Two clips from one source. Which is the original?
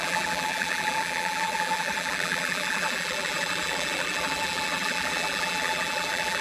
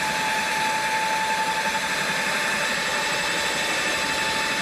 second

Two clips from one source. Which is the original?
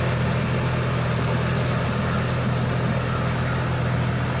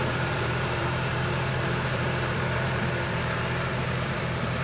first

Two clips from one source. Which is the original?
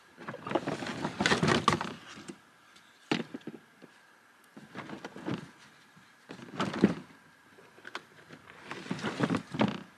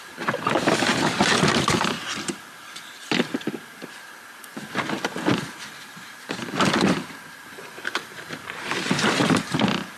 first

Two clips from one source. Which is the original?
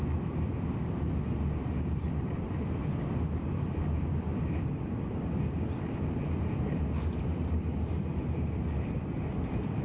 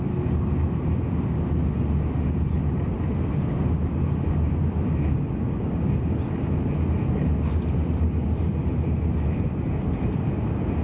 second